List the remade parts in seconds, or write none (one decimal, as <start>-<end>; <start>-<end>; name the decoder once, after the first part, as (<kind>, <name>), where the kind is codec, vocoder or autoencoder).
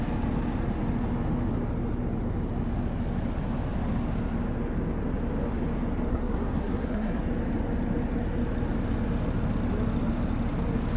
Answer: 6.1-7.2 (codec, SNAC)